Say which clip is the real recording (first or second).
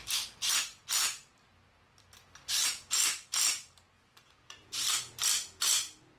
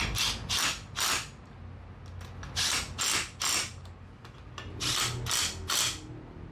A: second